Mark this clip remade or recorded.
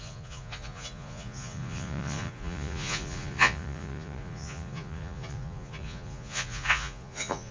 remade